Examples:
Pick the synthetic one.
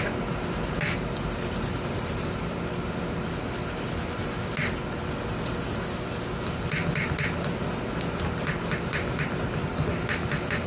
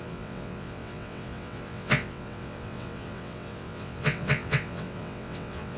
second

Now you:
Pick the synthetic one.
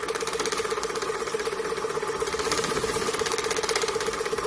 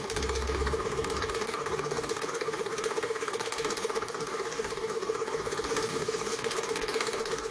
second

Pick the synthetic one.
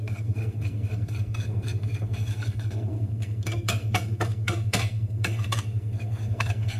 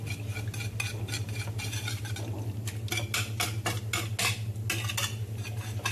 first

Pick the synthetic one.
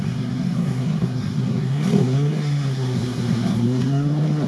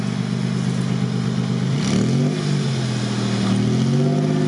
first